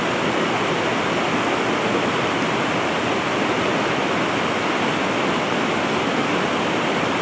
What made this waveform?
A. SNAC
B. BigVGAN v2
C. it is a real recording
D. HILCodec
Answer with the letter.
C